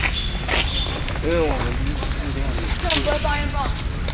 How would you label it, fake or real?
real